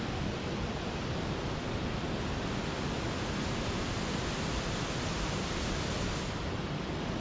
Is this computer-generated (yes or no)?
no